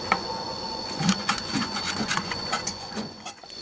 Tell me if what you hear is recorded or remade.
remade